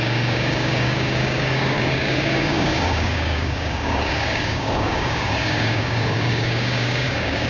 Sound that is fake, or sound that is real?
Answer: fake